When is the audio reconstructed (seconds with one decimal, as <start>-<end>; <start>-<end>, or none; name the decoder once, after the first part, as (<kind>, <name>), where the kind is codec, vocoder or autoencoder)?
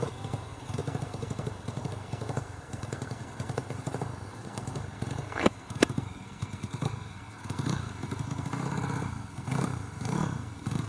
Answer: 0.0-10.9 (codec, SNAC)